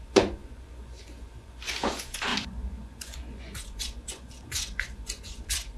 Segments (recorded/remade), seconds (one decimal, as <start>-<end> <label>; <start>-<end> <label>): 0.0-5.8 remade